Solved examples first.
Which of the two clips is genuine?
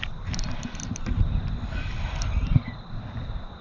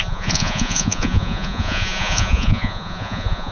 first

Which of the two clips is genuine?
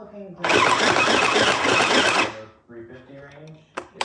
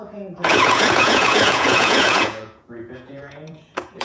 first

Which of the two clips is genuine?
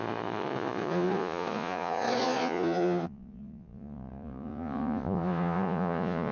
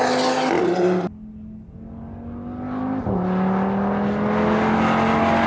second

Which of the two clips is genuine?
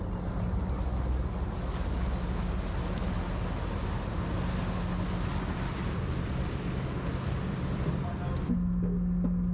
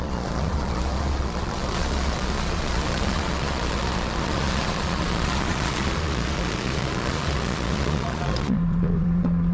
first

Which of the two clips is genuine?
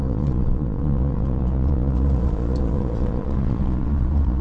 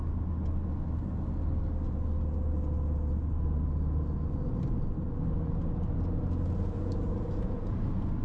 second